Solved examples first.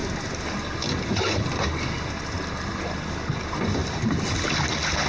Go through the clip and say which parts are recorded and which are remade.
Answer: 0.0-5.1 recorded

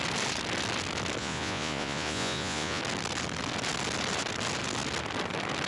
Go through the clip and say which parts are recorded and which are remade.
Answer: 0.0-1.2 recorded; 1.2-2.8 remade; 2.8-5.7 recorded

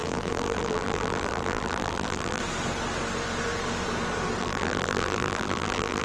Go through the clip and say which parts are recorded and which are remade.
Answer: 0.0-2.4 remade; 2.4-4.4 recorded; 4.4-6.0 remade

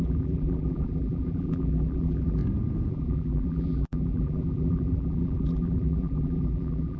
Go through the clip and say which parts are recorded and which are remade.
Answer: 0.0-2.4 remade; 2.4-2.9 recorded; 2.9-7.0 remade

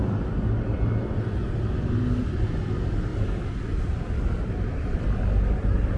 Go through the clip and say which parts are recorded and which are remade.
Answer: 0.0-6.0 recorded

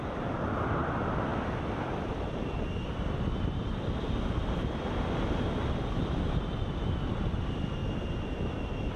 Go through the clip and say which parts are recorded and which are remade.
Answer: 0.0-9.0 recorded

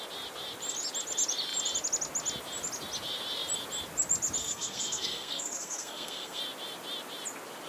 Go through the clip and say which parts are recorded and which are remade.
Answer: 0.0-4.4 recorded; 4.4-6.4 remade; 6.4-7.7 recorded

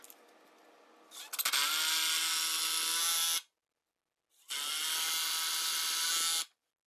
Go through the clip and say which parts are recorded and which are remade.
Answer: 0.0-6.9 recorded